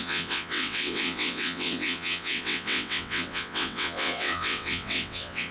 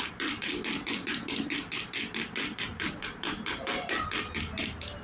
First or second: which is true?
second